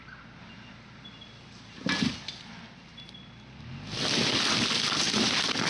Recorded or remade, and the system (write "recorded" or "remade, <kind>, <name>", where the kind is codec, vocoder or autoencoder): recorded